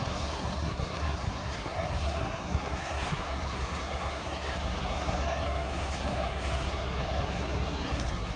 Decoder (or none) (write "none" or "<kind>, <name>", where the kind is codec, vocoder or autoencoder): codec, SNAC